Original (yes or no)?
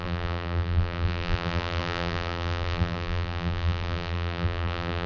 no